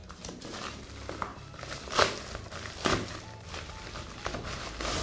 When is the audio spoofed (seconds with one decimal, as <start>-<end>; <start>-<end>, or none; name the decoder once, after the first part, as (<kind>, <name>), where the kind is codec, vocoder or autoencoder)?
0.0-0.8 (vocoder, BigVGAN v2); 1.3-1.8